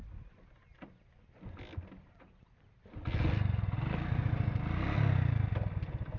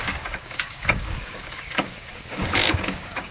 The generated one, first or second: second